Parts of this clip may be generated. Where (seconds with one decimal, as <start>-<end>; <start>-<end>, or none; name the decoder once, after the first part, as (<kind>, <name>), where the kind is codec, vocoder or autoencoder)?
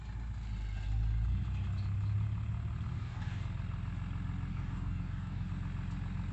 2.9-3.4 (codec, DAC); 4.5-5.5